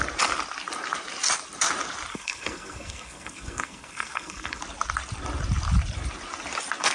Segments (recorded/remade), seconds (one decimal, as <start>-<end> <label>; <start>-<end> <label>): 0.0-2.1 recorded; 2.1-4.6 remade; 4.6-6.9 recorded